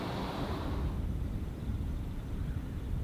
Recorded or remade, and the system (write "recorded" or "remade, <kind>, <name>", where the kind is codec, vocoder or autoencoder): recorded